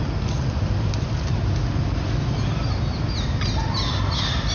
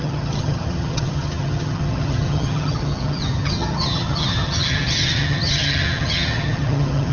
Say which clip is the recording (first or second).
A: first